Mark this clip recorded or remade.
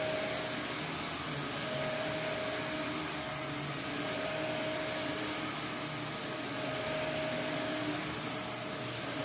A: recorded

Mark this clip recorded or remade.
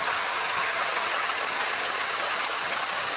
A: remade